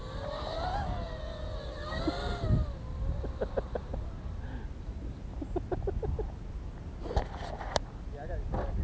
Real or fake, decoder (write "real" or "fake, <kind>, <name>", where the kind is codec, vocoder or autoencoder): real